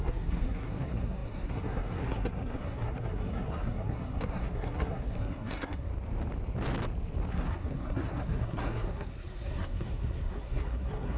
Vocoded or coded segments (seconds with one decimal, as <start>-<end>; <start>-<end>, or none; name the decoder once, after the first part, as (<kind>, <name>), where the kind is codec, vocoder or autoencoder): 0.0-5.9 (codec, SNAC); 7.3-11.2

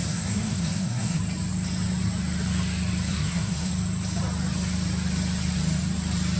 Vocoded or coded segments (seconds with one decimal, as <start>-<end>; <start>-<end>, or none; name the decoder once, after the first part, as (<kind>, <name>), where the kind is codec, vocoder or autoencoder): 0.0-1.2 (codec, SNAC); 3.1-3.7

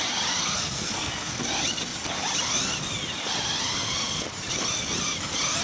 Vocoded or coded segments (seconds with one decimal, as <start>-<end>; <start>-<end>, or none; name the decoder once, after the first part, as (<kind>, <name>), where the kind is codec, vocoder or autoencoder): 0.4-1.3 (codec, SNAC)

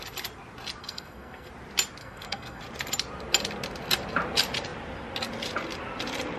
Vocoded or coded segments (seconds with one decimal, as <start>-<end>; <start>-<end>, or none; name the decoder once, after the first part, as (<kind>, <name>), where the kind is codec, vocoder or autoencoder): 0.8-1.5 (codec, SNAC); 2.0-2.6